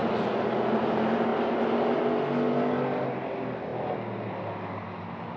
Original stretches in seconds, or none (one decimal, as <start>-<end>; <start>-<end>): 0.0-5.4